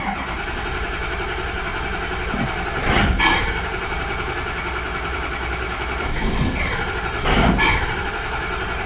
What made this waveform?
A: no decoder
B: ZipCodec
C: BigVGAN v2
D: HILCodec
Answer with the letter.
C